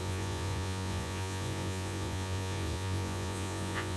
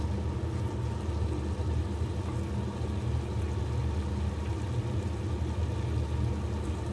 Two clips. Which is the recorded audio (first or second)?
second